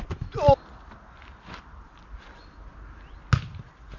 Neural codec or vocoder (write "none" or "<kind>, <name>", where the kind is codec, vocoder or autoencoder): none